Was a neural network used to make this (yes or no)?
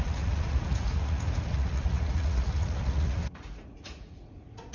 yes